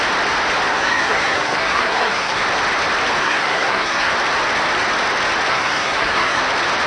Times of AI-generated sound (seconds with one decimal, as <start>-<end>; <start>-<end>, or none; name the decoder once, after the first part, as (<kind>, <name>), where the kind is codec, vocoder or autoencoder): 0.7-2.4 (codec, SNAC); 3.2-4.1; 5.5-6.4